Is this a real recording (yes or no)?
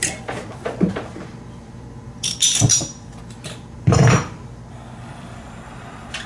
no